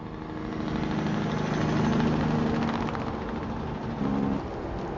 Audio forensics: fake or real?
real